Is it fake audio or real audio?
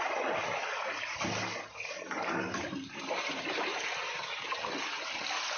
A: real